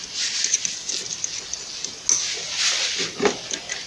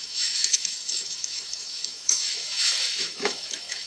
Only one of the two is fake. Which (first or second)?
second